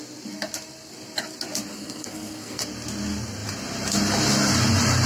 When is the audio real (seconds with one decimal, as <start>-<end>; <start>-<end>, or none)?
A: 0.0-1.7; 2.6-5.1